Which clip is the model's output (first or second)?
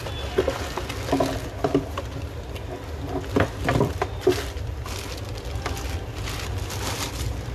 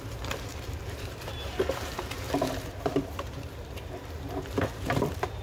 second